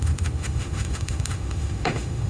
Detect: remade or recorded remade